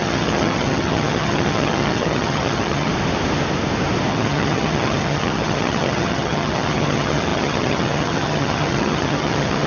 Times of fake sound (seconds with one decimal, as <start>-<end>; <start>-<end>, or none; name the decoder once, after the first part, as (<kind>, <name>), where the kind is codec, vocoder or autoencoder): 0.0-2.9 (vocoder, HiFi-GAN); 4.1-9.7

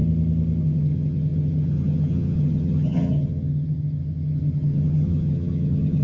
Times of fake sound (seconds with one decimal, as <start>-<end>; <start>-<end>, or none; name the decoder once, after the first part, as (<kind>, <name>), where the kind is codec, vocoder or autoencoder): 0.6-6.0 (vocoder, HiFi-GAN)

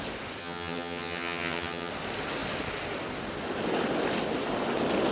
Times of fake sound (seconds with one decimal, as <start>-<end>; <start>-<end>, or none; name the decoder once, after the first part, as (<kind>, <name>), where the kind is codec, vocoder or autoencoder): 0.4-1.9 (vocoder, HiFi-GAN)

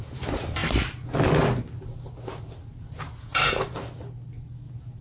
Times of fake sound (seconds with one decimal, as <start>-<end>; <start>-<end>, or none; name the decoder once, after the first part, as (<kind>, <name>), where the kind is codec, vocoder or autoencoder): none

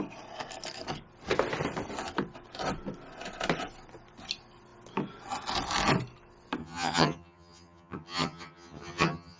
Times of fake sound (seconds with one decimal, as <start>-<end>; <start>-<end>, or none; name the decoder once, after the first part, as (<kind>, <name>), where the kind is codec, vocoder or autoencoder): 6.6-9.4 (vocoder, HiFi-GAN)

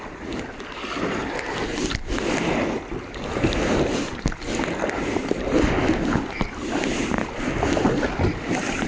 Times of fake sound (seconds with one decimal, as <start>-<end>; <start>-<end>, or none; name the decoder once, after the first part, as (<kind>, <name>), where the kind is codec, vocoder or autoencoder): none